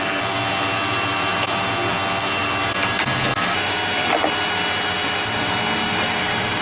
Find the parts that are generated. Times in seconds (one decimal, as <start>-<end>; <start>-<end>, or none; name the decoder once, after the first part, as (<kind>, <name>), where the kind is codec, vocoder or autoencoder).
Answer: none